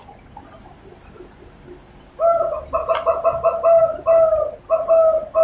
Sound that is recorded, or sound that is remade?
recorded